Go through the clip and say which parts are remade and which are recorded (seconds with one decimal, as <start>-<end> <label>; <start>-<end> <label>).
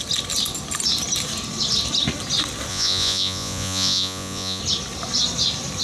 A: 0.0-2.7 recorded; 2.7-4.6 remade; 4.6-5.8 recorded